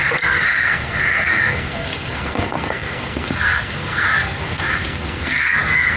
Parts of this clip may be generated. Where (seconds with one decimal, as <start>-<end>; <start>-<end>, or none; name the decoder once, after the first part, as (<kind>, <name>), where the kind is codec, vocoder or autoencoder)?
0.0-6.0 (codec, SNAC)